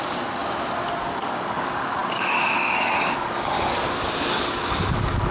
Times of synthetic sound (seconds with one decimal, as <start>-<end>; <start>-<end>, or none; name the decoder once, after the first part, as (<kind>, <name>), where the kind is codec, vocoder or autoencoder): 0.0-0.4 (codec, DAC); 1.1-5.3